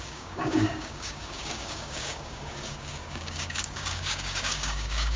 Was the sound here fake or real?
fake